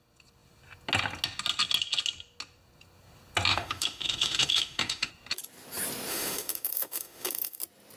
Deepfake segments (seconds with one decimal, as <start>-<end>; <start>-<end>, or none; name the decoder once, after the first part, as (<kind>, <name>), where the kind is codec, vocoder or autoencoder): 3.5-5.1 (autoencoder, DAC-VAE); 6.1-7.6